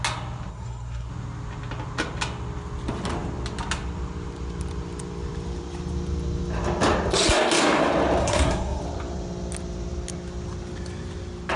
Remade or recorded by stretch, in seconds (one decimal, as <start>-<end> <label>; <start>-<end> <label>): 0.0-0.5 recorded; 0.5-1.1 remade; 1.1-8.2 recorded; 8.2-8.8 remade; 8.8-11.6 recorded